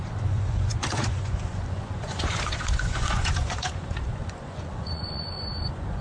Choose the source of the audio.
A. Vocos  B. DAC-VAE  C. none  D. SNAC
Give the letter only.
A